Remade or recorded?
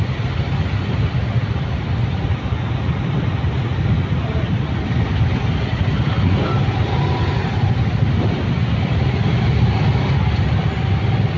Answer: recorded